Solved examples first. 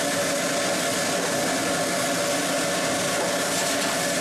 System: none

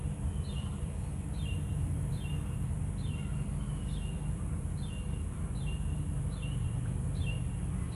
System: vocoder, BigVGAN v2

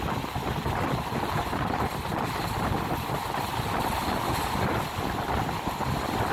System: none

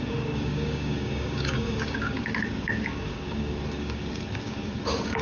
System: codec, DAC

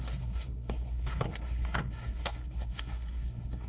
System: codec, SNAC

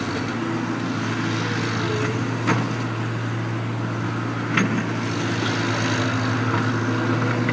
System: none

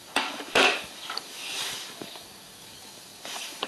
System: codec, DAC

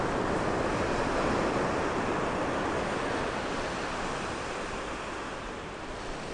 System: none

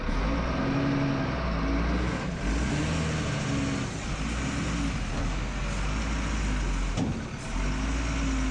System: none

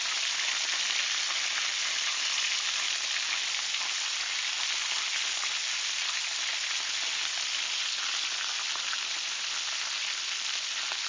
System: none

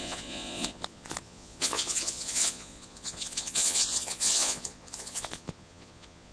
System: vocoder, Vocos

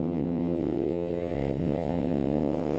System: vocoder, WaveNeXt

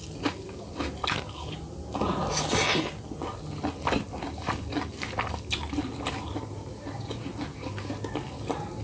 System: none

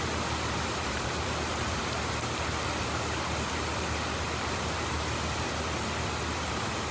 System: none